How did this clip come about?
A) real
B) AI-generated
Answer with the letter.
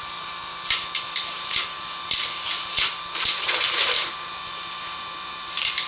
B